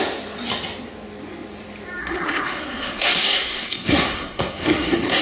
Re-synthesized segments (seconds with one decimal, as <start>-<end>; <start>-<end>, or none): 2.0-5.2